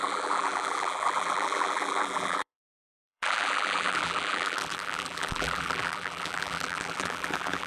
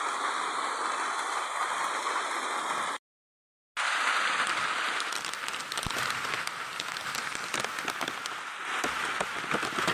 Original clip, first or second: second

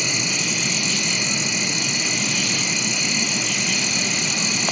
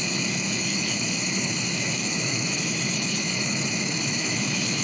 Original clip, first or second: first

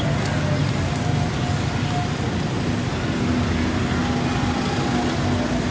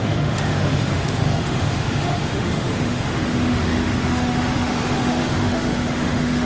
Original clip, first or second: first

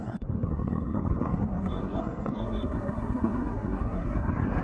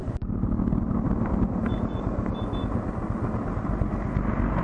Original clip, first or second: second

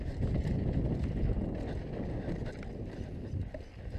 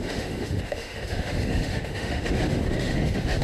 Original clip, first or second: first